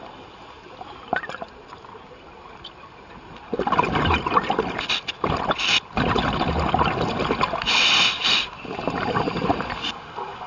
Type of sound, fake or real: real